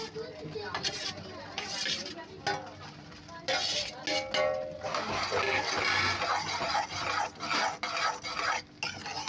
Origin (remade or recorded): recorded